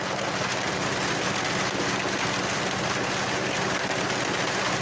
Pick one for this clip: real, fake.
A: real